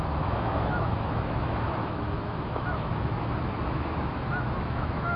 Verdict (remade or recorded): remade